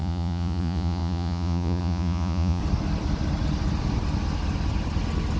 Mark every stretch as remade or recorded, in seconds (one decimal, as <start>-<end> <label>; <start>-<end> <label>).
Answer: 0.0-2.6 remade; 2.6-5.4 recorded